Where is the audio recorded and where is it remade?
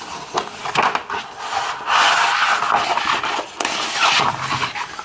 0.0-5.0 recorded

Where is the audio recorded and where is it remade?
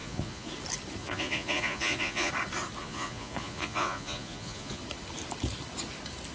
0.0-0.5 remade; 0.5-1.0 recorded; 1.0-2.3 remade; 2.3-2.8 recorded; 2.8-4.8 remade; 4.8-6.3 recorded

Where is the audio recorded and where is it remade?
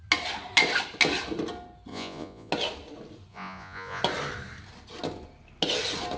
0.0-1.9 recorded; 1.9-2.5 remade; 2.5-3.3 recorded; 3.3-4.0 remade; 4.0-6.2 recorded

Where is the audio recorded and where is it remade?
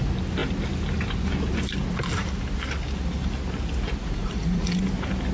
0.0-4.0 recorded; 4.0-4.8 remade; 4.8-5.3 recorded